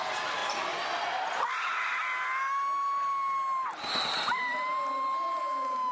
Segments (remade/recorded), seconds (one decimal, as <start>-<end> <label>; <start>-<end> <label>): 0.0-5.9 recorded